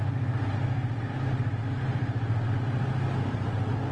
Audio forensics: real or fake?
real